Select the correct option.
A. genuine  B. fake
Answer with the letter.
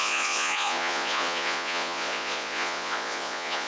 B